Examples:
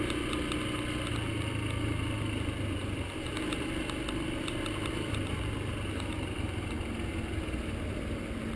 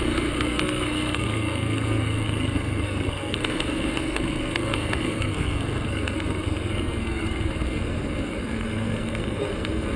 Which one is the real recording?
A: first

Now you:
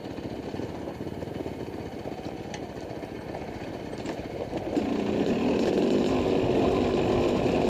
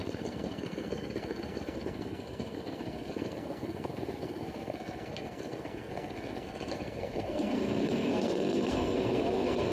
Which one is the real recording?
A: first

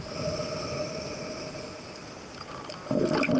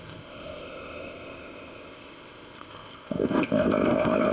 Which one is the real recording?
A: first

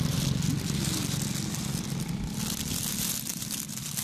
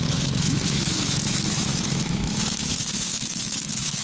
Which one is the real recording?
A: first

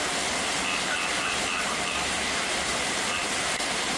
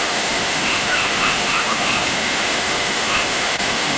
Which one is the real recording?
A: first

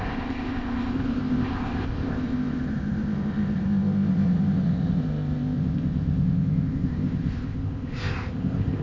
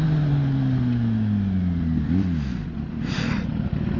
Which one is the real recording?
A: second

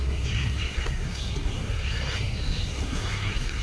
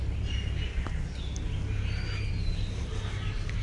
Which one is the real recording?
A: second